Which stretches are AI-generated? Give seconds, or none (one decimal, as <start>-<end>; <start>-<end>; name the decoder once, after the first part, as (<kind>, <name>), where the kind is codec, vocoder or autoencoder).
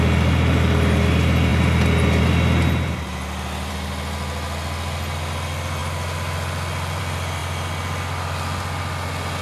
none